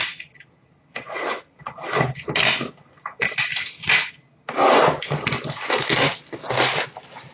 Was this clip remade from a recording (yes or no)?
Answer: no